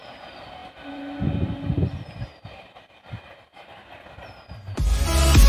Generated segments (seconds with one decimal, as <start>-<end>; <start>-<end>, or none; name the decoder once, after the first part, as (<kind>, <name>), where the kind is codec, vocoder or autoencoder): 0.0-5.5 (vocoder, BigVGAN v2)